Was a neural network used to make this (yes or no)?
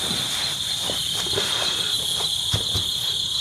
no